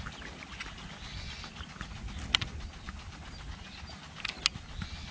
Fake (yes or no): no